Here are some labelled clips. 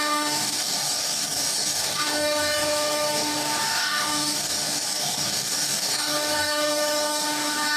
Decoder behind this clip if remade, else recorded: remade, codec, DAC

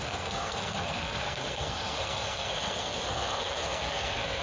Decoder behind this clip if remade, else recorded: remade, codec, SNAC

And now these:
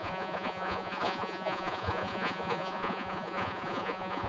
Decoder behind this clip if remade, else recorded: remade, vocoder, Vocos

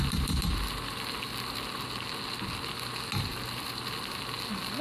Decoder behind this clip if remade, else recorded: recorded